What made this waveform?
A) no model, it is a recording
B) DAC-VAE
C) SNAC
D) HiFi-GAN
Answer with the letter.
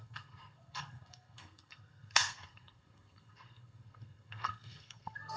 C